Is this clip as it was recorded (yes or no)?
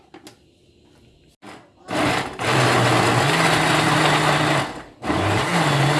yes